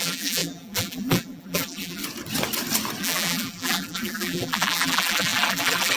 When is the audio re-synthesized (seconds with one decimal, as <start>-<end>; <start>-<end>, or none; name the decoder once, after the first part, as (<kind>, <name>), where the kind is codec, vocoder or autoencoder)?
0.0-2.0 (vocoder, BigVGAN v2); 3.0-6.0